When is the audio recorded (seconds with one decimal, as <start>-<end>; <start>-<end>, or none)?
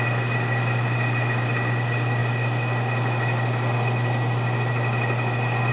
0.0-5.7